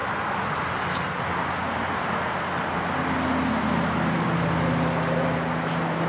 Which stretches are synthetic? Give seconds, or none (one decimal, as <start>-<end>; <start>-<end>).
none